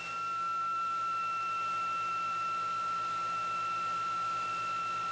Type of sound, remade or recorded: recorded